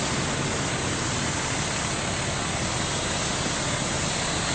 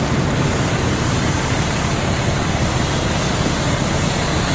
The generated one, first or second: second